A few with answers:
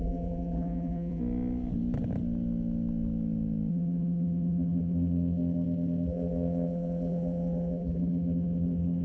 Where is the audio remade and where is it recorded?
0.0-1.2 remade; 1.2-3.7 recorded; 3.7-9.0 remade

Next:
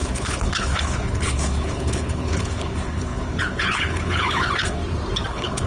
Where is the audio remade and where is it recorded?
0.0-4.8 remade; 4.8-5.3 recorded; 5.3-5.7 remade